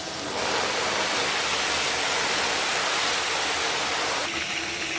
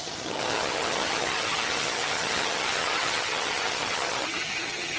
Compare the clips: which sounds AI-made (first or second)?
second